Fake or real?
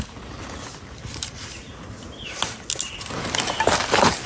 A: real